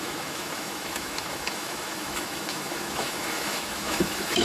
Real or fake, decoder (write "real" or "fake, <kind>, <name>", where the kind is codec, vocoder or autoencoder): fake, autoencoder, DAC-VAE